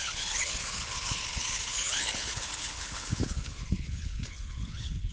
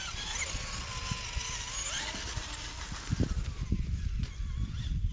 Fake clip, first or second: first